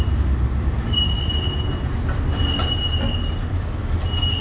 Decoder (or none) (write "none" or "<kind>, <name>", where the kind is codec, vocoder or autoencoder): none